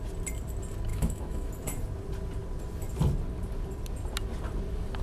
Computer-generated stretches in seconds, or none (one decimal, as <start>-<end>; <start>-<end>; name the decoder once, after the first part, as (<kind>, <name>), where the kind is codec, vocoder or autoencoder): 0.9-1.5 (autoencoder, DAC-VAE)